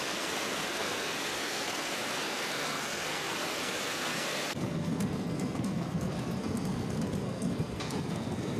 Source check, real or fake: fake